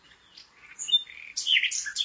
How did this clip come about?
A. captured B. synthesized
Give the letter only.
A